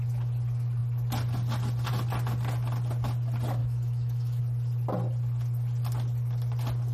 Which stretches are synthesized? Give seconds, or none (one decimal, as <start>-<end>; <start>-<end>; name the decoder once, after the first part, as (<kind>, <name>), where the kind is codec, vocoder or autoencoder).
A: 3.6-4.4 (autoencoder, DAC-VAE)